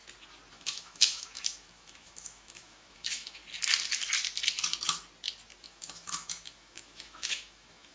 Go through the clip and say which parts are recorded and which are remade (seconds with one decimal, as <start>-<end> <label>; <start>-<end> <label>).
0.0-0.5 recorded; 0.5-3.4 remade; 3.4-5.6 recorded; 5.6-7.9 remade